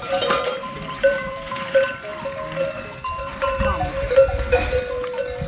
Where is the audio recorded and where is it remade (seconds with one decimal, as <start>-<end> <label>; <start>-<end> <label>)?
0.0-2.1 remade; 2.1-3.3 recorded; 3.3-4.3 remade; 4.3-5.5 recorded